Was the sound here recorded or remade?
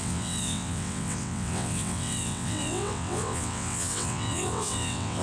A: remade